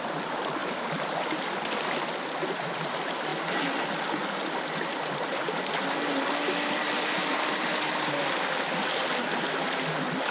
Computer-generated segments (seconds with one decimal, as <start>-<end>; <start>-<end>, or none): none